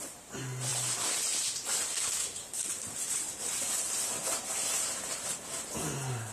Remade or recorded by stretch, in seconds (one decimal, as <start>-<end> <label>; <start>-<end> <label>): 0.0-0.7 recorded; 0.7-4.5 remade; 4.5-6.3 recorded